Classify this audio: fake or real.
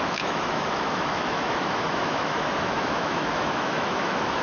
fake